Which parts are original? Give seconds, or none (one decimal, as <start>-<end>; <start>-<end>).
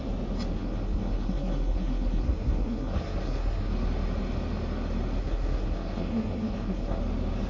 0.0-0.5; 3.7-5.2; 7.0-7.5